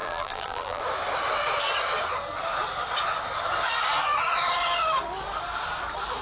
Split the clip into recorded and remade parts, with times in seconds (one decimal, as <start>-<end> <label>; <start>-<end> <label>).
0.0-0.8 remade; 0.8-6.2 recorded